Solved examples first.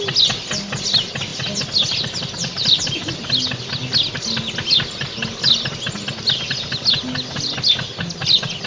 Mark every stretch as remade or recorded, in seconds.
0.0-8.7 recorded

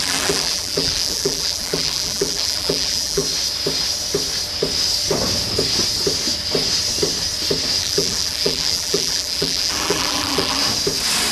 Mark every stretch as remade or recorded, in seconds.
0.0-3.2 remade; 3.2-7.8 recorded; 7.8-10.6 remade; 10.6-11.3 recorded